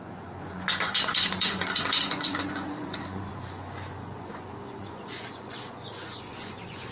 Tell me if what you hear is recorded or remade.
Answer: remade